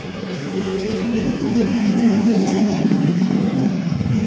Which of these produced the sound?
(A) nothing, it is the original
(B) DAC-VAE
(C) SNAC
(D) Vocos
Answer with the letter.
C